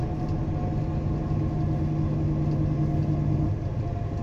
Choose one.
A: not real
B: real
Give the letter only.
B